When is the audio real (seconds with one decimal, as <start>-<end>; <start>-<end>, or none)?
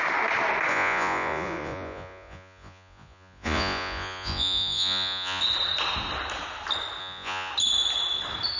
0.0-0.7; 5.4-7.0; 7.5-8.6